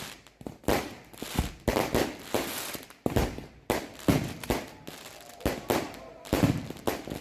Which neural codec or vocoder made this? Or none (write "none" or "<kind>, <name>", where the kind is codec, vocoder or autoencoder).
none